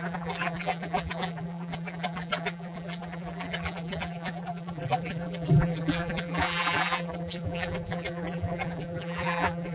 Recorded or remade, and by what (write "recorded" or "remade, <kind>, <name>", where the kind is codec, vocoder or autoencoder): remade, vocoder, BigVGAN v2